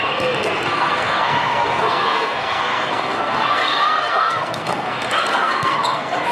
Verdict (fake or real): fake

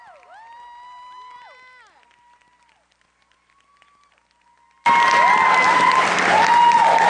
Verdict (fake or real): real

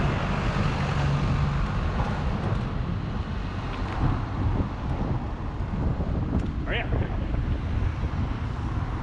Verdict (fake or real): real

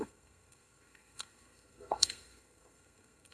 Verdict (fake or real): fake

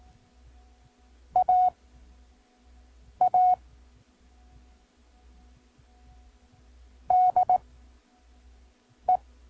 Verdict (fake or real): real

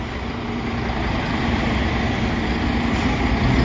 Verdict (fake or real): real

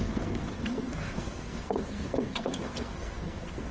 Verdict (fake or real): fake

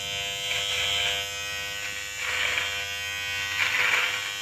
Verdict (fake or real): real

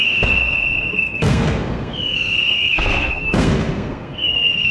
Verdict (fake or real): fake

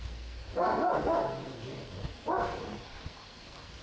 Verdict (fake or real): fake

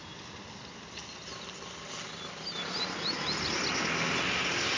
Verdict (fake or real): real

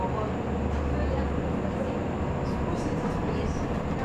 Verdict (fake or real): real